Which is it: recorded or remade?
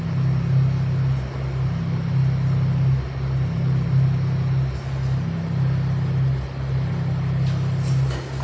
recorded